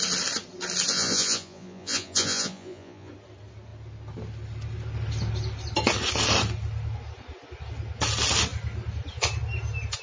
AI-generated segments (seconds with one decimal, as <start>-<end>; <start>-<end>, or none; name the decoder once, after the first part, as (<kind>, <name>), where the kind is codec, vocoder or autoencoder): 0.9-3.1 (vocoder, Vocos)